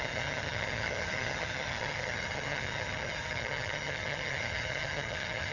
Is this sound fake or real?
fake